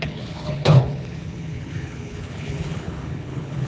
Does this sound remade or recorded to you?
remade